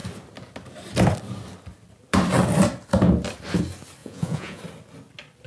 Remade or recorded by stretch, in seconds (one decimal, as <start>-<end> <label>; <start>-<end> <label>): 0.0-4.0 recorded; 4.0-4.6 remade; 4.6-5.5 recorded